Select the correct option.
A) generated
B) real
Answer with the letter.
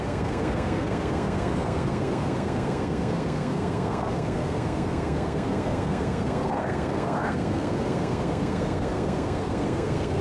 A